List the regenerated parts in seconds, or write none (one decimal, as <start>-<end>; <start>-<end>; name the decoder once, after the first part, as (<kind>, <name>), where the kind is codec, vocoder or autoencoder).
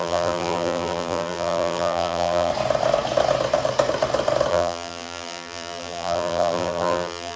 0.0-2.5 (vocoder, BigVGAN v2); 4.5-7.4